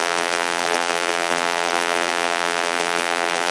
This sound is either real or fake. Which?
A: fake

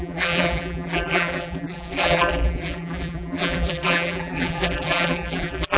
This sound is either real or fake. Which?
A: fake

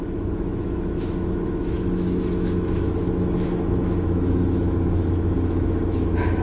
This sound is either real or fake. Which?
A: fake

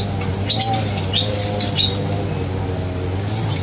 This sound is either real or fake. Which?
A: real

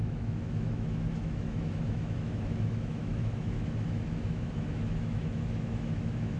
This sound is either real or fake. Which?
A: fake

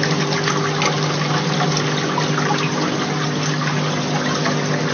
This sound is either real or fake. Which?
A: real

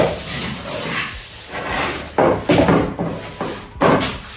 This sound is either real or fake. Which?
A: real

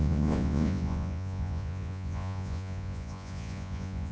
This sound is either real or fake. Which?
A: fake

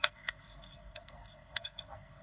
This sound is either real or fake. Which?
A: fake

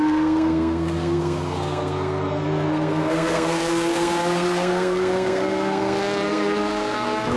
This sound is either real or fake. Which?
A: fake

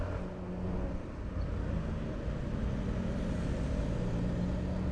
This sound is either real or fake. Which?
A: real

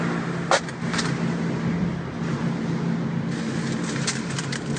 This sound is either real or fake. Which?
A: real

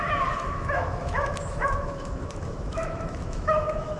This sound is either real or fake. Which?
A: fake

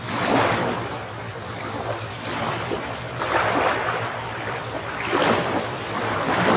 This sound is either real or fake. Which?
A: fake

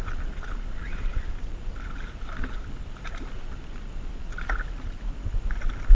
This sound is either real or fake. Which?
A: real